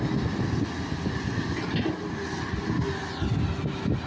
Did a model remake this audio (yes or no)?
no